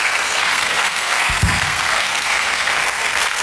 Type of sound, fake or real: fake